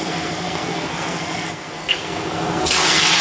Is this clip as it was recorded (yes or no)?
no